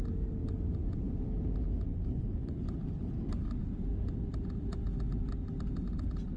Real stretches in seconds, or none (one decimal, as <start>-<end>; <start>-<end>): 0.0-1.9; 2.6-6.4